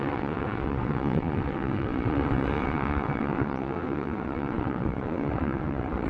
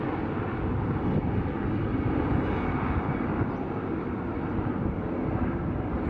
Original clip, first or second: second